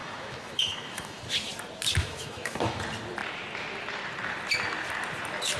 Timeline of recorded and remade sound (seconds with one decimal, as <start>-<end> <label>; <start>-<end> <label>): 0.0-1.2 remade; 1.2-2.0 recorded; 2.0-2.8 remade; 2.8-5.6 recorded